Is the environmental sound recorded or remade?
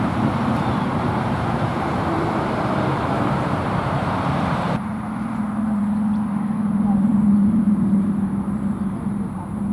remade